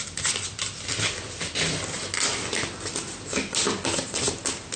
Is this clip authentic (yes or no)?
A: yes